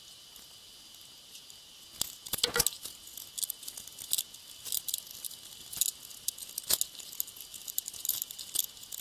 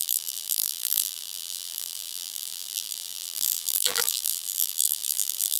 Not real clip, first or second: second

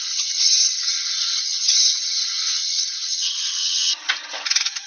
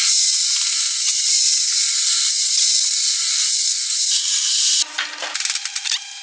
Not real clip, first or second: first